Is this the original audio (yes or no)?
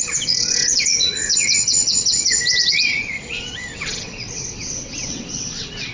no